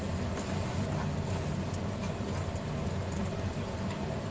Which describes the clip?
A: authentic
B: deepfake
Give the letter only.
A